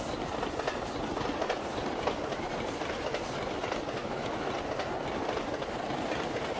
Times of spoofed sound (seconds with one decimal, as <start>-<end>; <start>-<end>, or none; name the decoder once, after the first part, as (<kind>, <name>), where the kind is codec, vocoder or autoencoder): 4.0-4.5 (autoencoder, DAC-VAE)